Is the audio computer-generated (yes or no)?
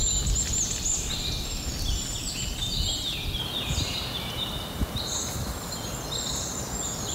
no